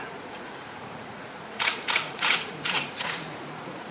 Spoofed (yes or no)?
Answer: yes